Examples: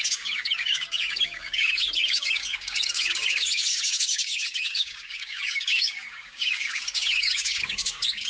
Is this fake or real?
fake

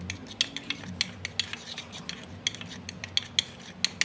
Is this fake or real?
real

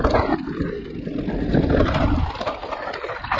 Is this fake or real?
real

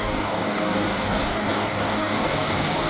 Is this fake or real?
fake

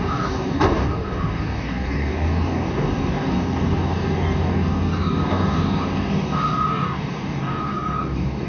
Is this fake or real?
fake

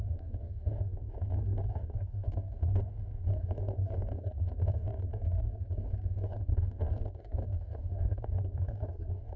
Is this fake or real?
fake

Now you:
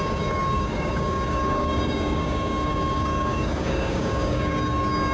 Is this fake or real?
fake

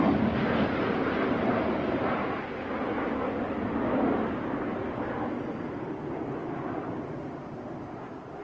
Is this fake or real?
real